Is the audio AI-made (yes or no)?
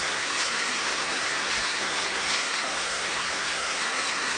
yes